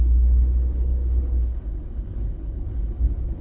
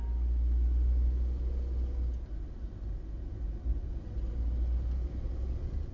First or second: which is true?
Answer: second